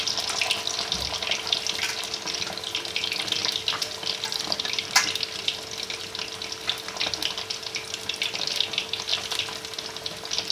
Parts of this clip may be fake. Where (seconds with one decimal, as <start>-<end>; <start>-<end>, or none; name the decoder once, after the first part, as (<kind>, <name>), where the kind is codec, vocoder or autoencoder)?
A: none